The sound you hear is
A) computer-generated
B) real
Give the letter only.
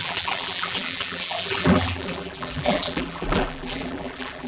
A